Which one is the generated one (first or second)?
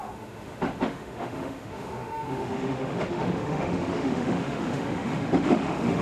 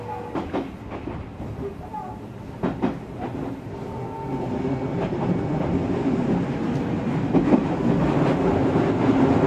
first